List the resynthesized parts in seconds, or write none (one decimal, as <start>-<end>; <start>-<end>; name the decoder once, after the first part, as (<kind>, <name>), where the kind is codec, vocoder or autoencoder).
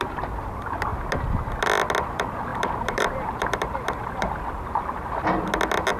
2.5-4.8 (vocoder, BigVGAN v2)